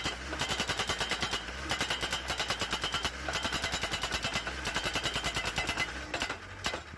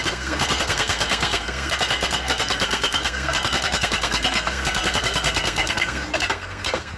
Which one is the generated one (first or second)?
second